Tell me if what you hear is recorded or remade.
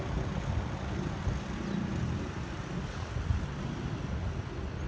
recorded